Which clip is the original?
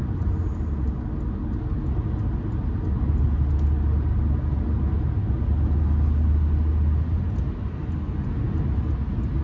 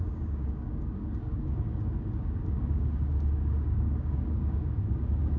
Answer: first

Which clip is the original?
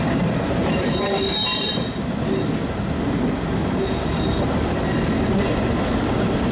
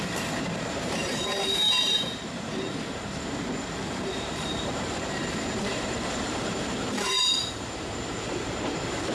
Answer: first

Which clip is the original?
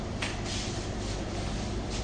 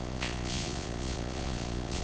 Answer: first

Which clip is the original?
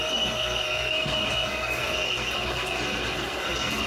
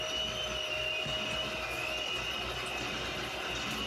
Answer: second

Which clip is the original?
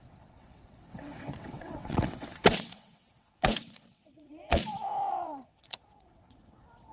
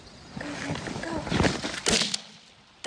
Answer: second